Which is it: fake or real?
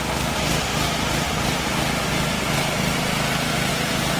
real